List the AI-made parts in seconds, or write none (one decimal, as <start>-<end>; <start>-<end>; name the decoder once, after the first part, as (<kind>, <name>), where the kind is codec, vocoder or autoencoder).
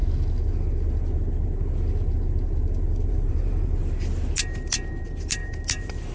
3.1-3.8 (vocoder, BigVGAN v2); 5.0-6.1